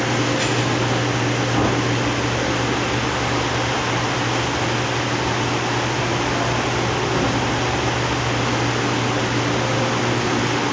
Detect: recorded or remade recorded